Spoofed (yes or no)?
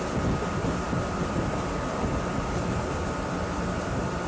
no